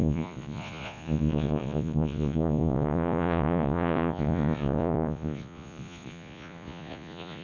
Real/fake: fake